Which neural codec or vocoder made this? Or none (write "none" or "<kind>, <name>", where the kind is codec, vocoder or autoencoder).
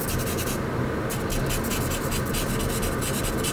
none